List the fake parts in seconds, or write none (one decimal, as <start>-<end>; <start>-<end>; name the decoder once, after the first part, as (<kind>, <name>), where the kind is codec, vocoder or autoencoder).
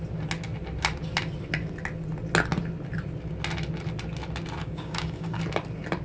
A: 4.6-5.4 (codec, DAC)